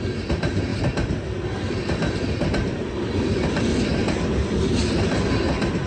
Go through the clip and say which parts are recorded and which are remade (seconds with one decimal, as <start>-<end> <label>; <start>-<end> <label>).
0.0-5.9 recorded

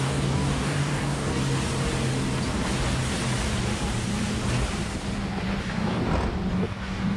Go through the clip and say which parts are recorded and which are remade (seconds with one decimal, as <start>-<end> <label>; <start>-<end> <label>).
0.0-1.3 remade; 1.3-5.6 recorded; 5.6-6.0 remade; 6.0-6.5 recorded; 6.5-7.2 remade

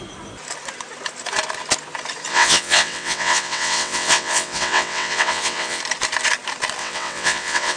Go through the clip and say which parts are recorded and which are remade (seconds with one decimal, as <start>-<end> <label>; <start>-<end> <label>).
0.0-2.3 recorded; 2.3-5.8 remade; 5.8-6.8 recorded; 6.8-7.8 remade

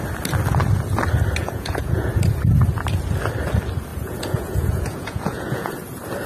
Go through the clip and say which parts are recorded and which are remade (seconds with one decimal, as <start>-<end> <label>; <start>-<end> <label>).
0.0-1.4 recorded; 1.4-2.1 remade; 2.1-3.9 recorded; 3.9-5.7 remade; 5.7-6.3 recorded

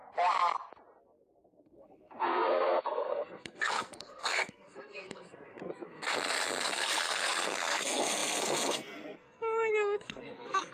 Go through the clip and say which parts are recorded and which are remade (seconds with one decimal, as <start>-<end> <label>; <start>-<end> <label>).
0.0-1.3 recorded; 1.3-10.7 remade

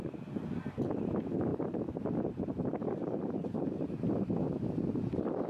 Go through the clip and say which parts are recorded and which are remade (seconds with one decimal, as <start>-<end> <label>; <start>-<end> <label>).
0.0-1.5 recorded; 1.5-4.0 remade; 4.0-5.5 recorded